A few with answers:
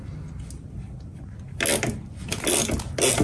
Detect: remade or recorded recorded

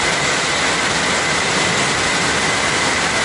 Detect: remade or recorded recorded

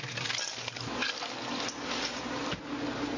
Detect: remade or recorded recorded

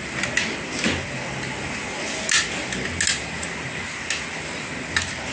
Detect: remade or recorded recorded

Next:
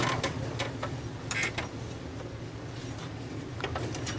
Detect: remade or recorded recorded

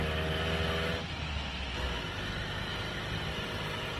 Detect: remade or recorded recorded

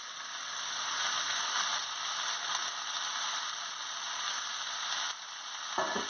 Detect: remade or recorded recorded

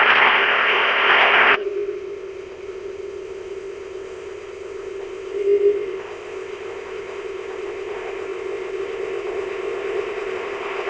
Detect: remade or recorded remade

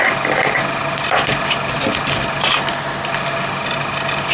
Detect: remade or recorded recorded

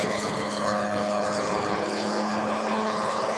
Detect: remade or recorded remade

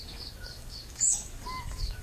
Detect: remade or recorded remade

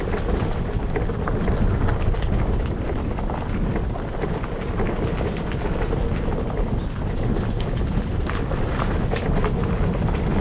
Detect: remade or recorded recorded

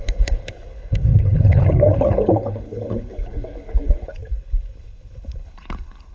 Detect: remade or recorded remade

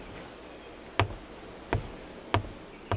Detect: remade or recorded recorded